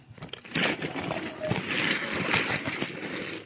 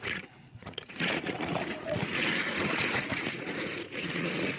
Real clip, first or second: first